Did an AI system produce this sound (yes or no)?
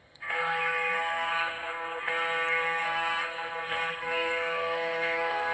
yes